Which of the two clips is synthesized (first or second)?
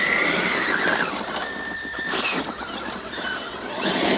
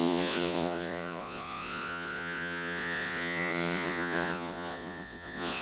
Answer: second